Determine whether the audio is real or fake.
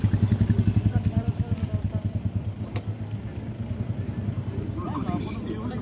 real